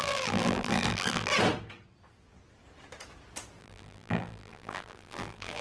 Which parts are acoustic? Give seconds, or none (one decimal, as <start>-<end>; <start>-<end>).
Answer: 1.3-3.6